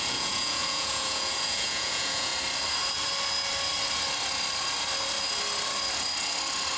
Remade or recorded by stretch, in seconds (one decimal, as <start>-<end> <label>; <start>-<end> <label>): 0.0-2.3 remade; 2.3-6.8 recorded